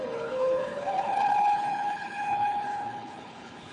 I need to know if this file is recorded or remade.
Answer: remade